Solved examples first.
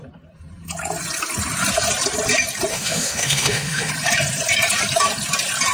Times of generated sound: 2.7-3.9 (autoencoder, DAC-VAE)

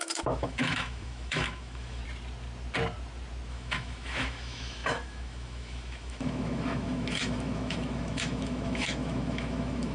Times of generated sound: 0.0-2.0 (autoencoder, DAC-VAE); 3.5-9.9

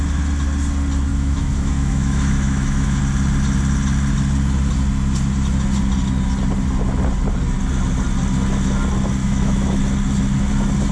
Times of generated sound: 1.1-3.0 (autoencoder, DAC-VAE); 9.2-9.8

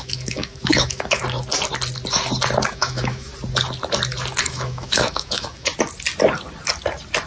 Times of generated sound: 0.0-1.2 (autoencoder, DAC-VAE); 2.7-3.3; 4.4-5.7

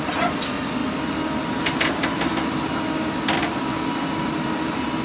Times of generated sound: none

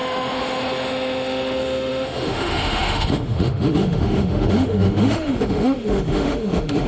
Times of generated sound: 0.0-6.9 (autoencoder, DAC-VAE)

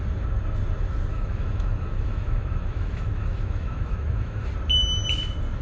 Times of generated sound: 1.1-4.5 (autoencoder, DAC-VAE)